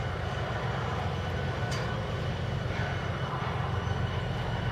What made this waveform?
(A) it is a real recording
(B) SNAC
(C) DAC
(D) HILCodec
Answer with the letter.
A